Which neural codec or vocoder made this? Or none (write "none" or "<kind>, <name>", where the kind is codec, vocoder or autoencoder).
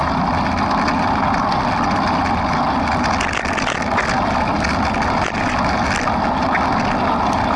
none